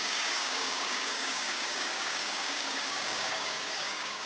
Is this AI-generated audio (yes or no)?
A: yes